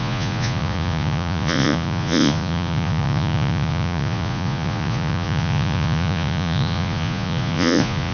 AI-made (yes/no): yes